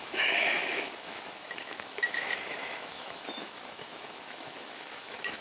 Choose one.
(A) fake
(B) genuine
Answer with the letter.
A